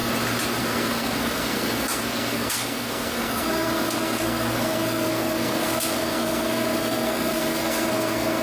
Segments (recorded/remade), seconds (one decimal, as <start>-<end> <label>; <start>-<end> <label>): 0.0-0.6 recorded; 0.6-8.4 remade